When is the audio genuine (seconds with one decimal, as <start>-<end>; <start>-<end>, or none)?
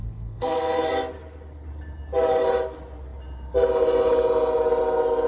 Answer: 0.9-5.3